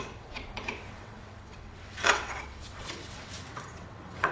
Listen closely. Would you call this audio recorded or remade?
remade